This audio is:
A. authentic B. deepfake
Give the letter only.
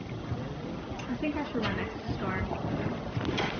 A